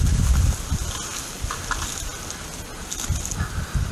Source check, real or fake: real